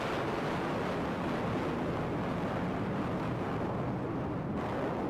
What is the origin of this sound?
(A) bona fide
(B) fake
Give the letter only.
A